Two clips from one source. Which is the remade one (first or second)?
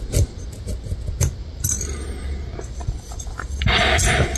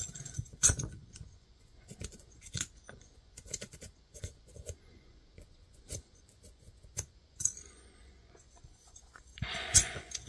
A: second